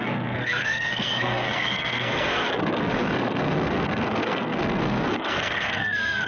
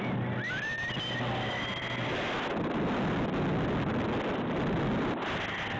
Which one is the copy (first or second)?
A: first